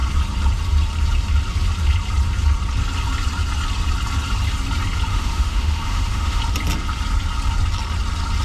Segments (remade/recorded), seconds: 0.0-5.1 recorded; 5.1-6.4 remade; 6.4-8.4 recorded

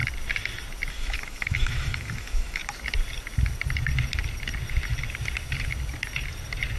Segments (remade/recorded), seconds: 0.0-0.9 recorded; 0.9-2.6 remade; 2.6-6.8 recorded

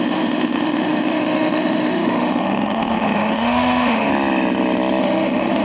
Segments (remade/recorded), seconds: 0.0-4.1 remade; 4.1-5.0 recorded; 5.0-5.6 remade